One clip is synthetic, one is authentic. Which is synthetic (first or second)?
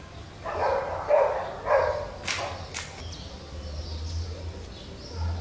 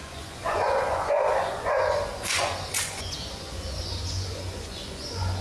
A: second